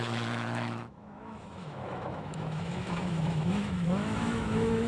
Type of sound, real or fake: fake